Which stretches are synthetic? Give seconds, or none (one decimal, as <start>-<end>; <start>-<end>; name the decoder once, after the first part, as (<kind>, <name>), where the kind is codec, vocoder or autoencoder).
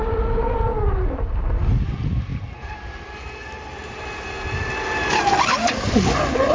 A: none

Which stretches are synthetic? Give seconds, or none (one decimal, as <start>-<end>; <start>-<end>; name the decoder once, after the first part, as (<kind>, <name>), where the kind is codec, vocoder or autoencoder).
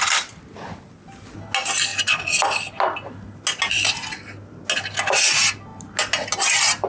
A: none